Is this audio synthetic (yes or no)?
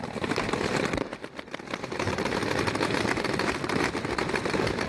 no